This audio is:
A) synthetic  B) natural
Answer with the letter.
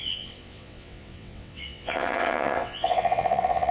A